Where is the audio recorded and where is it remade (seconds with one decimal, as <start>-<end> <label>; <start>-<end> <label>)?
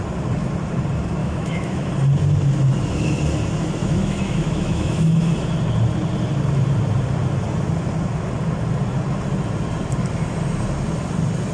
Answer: 0.0-1.2 recorded; 1.2-1.9 remade; 1.9-3.8 recorded; 3.8-5.3 remade; 5.3-11.5 recorded